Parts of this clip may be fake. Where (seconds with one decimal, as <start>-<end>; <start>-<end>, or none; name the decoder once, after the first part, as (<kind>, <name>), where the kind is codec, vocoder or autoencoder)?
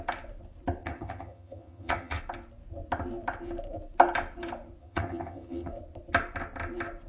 0.8-2.2 (vocoder, HiFi-GAN); 4.8-5.7